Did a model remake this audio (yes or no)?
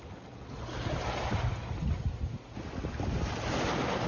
no